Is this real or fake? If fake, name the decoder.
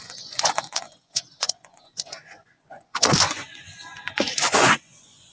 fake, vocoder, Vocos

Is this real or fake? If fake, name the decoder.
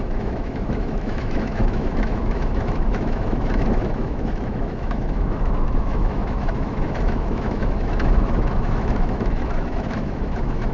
fake, autoencoder, DAC-VAE